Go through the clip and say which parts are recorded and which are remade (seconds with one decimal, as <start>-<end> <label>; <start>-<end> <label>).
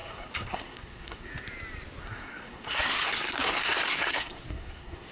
0.0-1.3 remade; 1.3-2.0 recorded; 2.0-5.1 remade